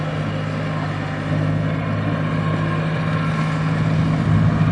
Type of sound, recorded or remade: recorded